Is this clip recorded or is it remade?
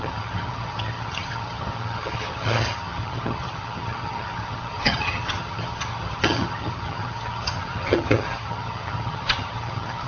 remade